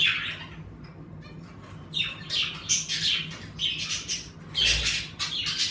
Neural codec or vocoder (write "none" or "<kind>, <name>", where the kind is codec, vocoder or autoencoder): none